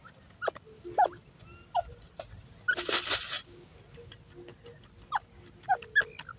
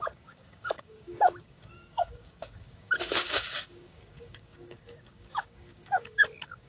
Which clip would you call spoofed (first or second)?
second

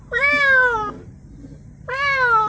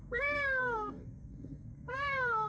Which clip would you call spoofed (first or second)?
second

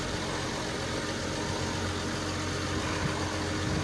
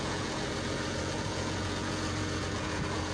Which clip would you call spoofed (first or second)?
second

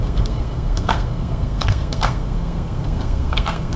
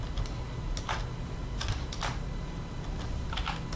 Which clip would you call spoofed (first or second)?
first